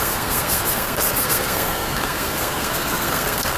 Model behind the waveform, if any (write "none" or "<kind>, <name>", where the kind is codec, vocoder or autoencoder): codec, SNAC